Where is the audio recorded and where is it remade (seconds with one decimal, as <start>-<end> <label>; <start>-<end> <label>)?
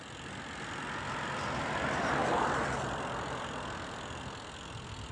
0.0-2.2 recorded; 2.2-4.2 remade; 4.2-5.1 recorded